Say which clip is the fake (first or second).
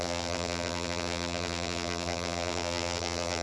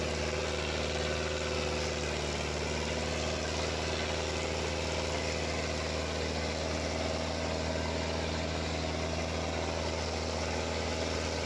first